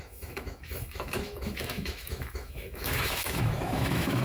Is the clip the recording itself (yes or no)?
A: no